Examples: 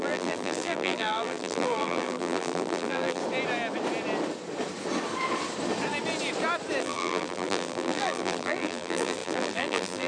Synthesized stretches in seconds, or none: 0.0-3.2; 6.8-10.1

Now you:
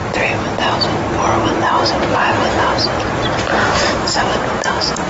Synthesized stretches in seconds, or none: 3.6-5.1